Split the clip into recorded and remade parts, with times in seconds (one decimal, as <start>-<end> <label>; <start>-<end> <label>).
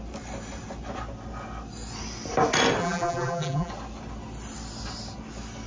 0.0-2.8 recorded; 2.8-3.7 remade; 3.7-5.7 recorded